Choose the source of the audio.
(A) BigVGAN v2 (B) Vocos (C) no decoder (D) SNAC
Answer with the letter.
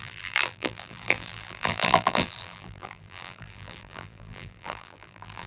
A